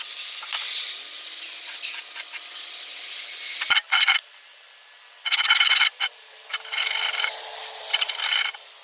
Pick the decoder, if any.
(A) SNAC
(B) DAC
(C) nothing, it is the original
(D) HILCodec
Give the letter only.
C